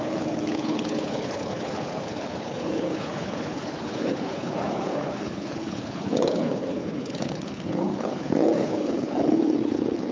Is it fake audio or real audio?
fake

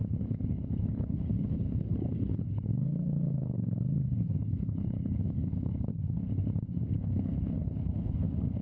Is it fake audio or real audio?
fake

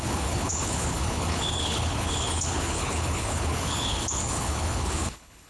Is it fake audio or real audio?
fake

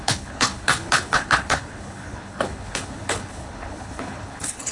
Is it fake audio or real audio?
fake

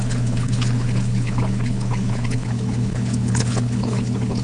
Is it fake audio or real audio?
fake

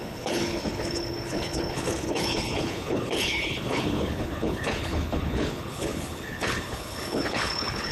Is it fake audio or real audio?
fake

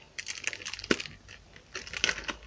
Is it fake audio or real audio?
real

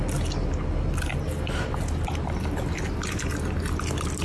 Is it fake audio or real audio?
real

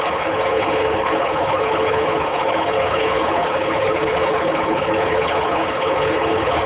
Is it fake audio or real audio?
fake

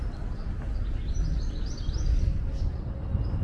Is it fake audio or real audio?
real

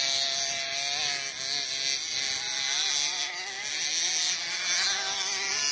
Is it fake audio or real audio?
real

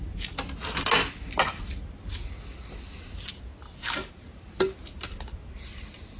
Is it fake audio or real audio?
real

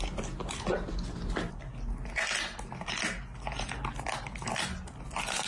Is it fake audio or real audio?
real